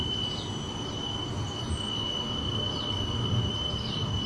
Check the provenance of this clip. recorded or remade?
recorded